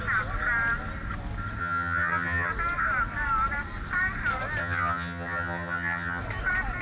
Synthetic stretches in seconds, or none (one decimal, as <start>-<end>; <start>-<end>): 1.6-2.5; 4.6-6.2